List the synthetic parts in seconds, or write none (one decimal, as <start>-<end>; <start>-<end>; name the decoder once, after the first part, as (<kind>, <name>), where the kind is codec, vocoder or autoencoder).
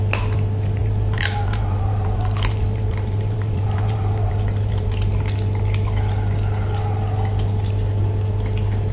0.8-5.1 (vocoder, BigVGAN v2)